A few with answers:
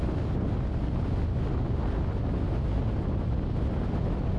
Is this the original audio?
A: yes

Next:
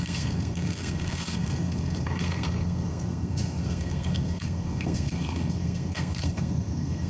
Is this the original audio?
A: no